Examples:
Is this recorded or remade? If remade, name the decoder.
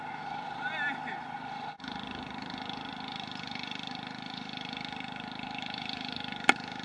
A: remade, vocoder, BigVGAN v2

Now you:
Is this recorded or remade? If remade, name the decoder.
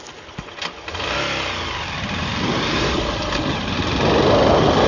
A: recorded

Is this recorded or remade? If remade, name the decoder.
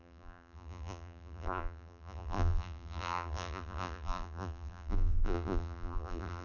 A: remade, vocoder, BigVGAN v2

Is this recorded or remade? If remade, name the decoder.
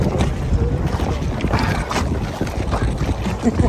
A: recorded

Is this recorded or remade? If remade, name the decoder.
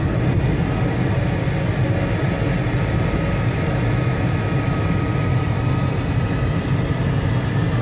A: recorded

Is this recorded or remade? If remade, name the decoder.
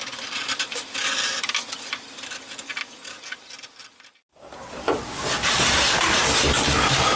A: recorded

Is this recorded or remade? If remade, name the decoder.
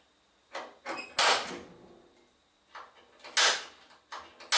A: recorded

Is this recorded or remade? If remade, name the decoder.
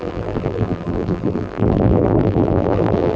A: remade, vocoder, BigVGAN v2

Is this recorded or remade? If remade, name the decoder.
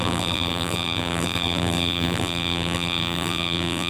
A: remade, vocoder, BigVGAN v2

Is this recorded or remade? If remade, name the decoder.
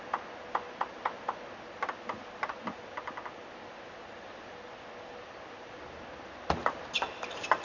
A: recorded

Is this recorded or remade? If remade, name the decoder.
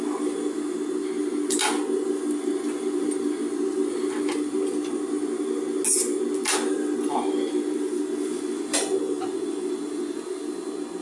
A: recorded